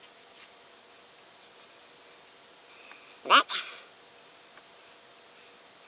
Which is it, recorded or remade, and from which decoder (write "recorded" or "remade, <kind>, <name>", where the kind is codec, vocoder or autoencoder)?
recorded